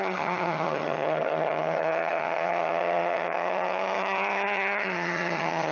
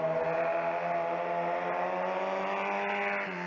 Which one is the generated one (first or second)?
first